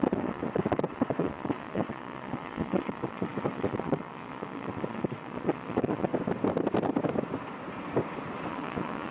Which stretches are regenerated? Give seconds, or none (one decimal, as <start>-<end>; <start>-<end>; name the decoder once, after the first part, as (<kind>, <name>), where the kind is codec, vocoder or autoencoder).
0.0-6.1 (vocoder, Vocos); 8.5-9.1